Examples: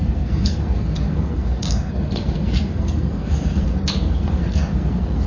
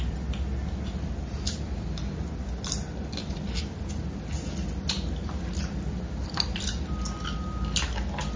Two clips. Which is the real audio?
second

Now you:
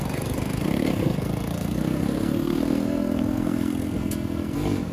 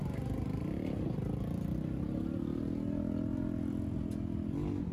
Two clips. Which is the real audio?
second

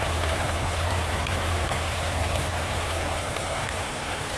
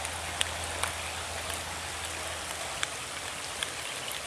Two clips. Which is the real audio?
second